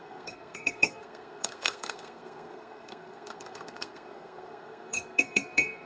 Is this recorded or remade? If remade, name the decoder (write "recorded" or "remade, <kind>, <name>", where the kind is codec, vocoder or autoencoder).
remade, codec, SNAC